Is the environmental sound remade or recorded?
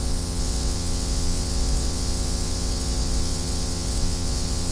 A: remade